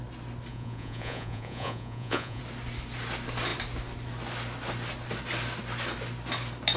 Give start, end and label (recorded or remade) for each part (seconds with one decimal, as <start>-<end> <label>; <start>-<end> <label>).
0.0-0.5 recorded; 0.5-2.4 remade; 2.4-6.8 recorded